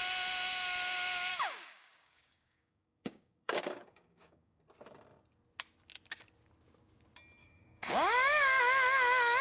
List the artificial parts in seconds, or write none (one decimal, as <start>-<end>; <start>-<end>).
1.3-4.6; 7.4-8.6